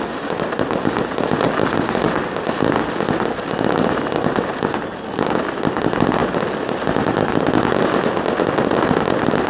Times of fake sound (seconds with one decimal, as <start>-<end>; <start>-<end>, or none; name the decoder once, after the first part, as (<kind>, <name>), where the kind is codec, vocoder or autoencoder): 0.0-6.2 (vocoder, BigVGAN v2); 8.3-9.5